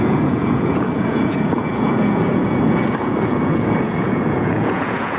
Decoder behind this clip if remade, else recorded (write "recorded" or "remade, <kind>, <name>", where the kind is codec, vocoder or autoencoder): remade, vocoder, Vocos